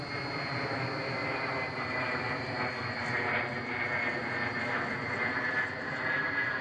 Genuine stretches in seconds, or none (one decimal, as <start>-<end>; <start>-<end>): 0.0-6.6